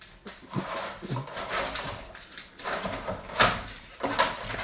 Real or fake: real